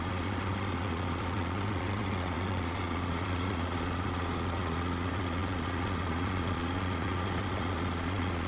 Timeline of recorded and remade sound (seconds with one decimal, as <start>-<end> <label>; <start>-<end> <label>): 0.0-8.5 remade